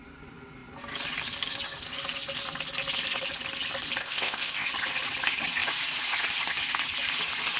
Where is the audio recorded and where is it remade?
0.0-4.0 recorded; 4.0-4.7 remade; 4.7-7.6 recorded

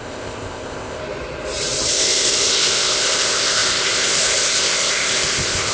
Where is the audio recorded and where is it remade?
0.0-1.0 remade; 1.0-1.9 recorded; 1.9-5.7 remade